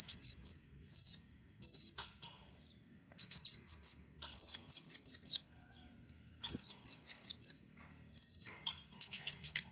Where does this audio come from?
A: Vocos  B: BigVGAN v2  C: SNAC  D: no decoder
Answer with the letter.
C